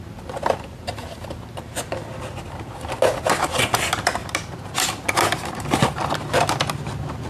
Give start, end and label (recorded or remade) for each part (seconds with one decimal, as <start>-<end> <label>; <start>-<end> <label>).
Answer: 0.0-7.3 recorded